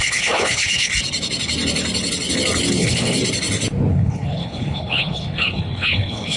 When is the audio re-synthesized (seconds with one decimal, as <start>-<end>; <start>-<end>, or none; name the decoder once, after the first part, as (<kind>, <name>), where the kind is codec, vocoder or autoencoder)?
0.0-0.9 (codec, HILCodec); 2.8-3.2; 3.9-6.4